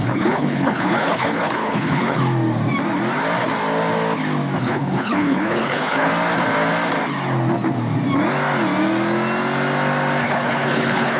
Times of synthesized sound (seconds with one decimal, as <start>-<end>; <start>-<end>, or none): 0.0-2.2; 4.6-6.1; 10.2-11.2